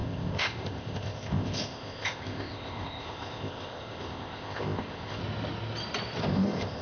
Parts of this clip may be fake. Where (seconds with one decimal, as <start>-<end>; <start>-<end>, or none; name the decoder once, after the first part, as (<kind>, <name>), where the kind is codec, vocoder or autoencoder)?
0.0-5.2 (codec, ZipCodec); 6.2-6.8